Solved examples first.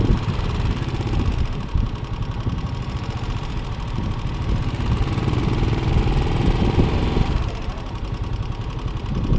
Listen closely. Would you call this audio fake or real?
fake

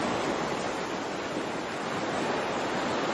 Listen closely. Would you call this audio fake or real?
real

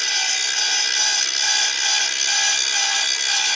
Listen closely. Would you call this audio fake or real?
real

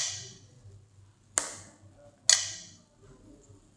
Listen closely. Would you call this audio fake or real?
real